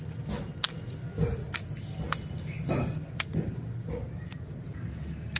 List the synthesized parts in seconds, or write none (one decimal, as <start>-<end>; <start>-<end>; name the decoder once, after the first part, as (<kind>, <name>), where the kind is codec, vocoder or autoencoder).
none